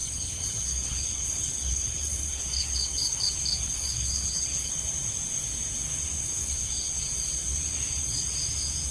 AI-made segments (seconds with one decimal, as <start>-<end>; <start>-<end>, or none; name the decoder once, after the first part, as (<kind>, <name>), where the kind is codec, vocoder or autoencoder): 0.0-4.7 (codec, HILCodec); 6.2-7.0